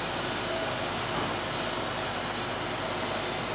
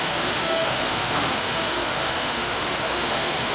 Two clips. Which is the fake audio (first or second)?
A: second